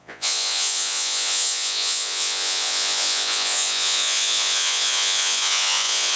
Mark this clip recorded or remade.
remade